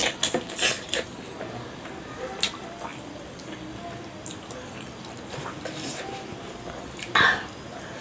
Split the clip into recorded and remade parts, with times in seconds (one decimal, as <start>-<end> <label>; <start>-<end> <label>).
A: 0.0-8.0 recorded